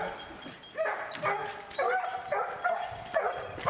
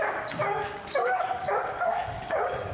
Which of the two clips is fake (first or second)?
second